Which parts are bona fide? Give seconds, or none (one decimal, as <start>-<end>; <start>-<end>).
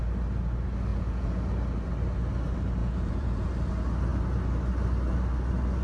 0.0-0.9; 1.4-2.8; 3.5-5.8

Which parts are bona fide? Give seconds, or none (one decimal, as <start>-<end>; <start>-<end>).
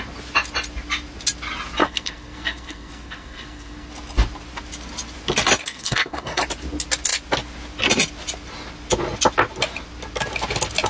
0.0-1.8; 3.9-5.6; 6.4-10.9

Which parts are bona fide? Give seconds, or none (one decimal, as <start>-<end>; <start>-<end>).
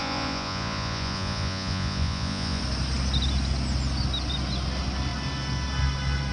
2.6-6.3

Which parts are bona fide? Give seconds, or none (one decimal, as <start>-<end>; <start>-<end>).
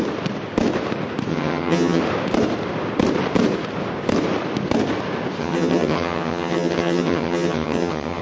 0.0-1.3; 2.0-5.4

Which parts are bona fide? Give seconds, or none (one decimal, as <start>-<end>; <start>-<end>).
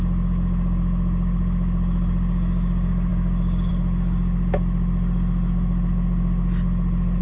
0.0-7.2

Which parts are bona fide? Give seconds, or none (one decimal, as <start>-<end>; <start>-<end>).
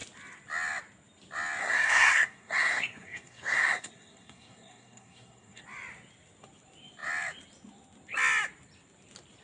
0.0-1.6; 5.6-9.4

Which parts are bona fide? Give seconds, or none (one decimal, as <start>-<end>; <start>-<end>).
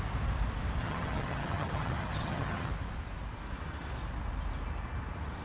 0.0-0.8; 2.7-5.4